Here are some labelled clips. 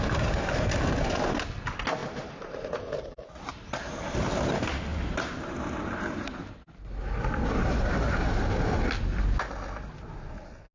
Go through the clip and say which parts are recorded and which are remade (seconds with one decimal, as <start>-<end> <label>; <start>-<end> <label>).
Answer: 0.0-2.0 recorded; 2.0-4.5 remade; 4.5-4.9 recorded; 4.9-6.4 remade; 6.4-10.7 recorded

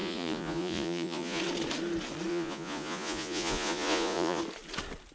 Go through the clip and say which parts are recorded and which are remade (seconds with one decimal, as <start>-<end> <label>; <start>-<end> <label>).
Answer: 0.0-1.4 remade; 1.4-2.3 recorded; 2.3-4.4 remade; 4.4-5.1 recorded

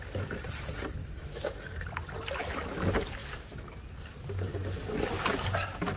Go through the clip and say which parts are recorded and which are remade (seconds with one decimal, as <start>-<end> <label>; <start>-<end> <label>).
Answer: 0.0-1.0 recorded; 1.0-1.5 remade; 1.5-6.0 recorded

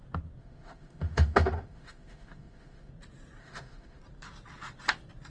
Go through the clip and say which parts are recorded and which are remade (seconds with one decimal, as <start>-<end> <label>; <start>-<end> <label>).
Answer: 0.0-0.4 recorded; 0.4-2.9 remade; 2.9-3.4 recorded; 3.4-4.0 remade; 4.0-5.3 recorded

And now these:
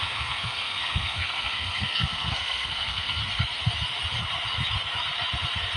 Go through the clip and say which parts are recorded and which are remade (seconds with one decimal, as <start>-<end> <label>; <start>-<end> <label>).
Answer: 0.0-3.2 remade; 3.2-5.8 recorded

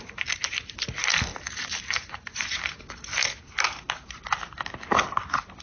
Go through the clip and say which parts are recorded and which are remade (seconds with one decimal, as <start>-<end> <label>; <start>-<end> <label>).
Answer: 0.0-1.3 recorded; 1.3-2.8 remade; 2.8-5.6 recorded

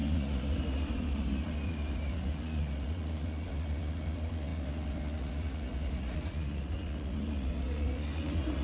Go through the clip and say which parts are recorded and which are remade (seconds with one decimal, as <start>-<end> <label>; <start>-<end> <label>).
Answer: 0.0-8.6 remade

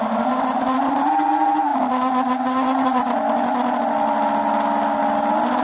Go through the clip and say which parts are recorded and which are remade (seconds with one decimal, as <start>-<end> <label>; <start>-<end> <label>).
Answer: 0.0-5.6 recorded